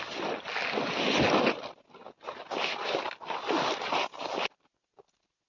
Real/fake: real